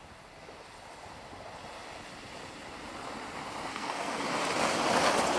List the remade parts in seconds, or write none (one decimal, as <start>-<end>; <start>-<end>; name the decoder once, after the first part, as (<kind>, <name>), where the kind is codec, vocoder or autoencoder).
3.7-4.2 (codec, SNAC)